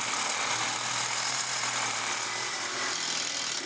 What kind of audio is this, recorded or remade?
recorded